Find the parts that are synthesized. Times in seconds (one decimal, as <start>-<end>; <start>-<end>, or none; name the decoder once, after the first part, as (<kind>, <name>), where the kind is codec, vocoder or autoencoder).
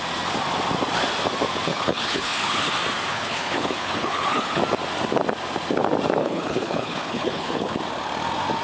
1.7-2.7 (codec, HILCodec); 3.1-4.6; 6.2-7.8